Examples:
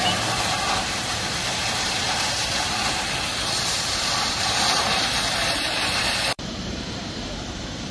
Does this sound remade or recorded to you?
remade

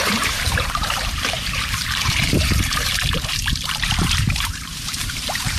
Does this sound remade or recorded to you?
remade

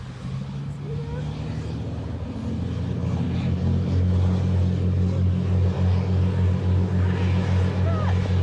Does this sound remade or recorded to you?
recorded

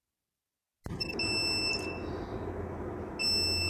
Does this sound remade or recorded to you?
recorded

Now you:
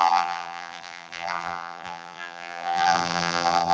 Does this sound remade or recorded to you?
remade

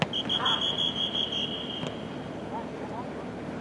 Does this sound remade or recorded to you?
recorded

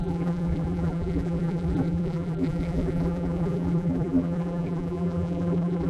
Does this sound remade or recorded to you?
remade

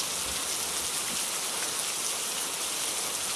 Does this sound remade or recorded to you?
recorded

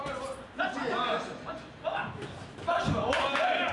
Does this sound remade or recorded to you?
recorded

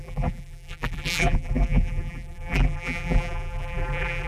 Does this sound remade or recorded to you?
remade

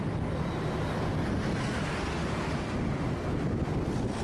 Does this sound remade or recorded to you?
recorded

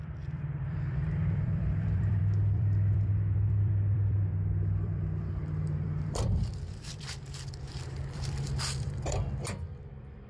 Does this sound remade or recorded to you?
remade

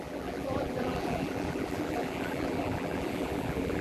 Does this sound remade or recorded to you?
remade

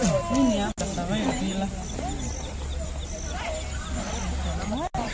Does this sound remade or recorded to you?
recorded